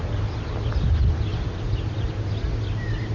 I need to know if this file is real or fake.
real